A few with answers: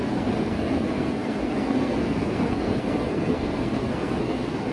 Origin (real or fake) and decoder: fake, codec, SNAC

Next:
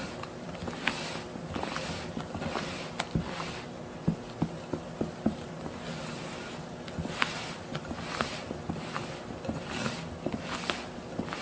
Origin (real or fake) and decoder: real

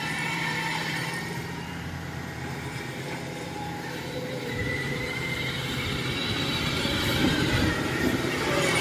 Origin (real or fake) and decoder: fake, vocoder, BigVGAN v2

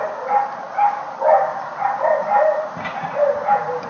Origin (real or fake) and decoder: real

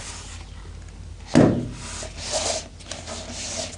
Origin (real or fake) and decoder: real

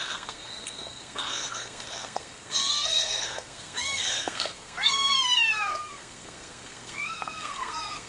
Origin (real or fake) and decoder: fake, codec, SNAC